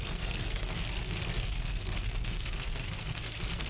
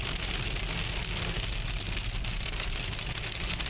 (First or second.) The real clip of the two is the second